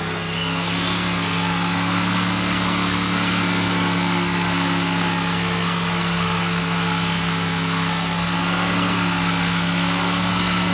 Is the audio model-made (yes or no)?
yes